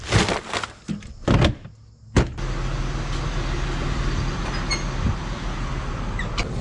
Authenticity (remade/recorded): recorded